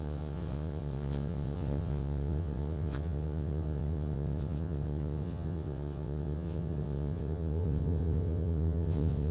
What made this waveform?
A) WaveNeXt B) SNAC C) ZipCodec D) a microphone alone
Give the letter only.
A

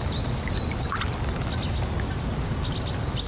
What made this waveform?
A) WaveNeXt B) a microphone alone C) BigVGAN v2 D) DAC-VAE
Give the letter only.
B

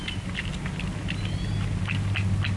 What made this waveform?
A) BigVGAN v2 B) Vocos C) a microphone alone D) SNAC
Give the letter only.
C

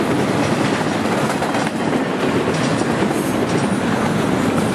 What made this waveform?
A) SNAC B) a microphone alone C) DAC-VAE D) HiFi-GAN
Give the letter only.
B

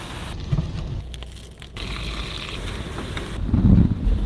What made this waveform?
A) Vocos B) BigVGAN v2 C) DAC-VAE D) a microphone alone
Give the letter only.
D